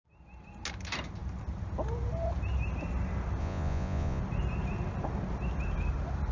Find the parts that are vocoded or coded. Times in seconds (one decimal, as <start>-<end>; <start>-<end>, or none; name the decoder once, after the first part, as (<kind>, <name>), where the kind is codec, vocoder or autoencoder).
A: 3.4-4.2 (vocoder, Vocos)